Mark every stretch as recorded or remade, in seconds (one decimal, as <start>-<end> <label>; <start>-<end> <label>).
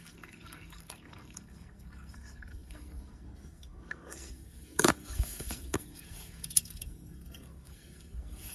0.0-8.5 remade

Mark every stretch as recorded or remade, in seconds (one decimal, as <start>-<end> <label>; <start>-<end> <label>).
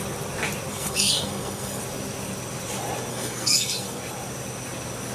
0.0-0.7 recorded; 0.7-1.8 remade; 1.8-3.1 recorded; 3.1-4.0 remade; 4.0-5.1 recorded